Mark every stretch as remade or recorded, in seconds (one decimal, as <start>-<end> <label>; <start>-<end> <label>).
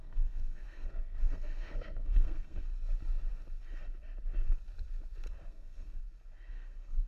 0.0-2.7 remade; 2.7-5.5 recorded; 5.5-6.0 remade; 6.0-6.5 recorded; 6.5-7.1 remade